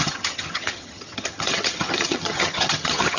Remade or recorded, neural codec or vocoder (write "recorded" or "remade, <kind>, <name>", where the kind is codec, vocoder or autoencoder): remade, vocoder, HiFi-GAN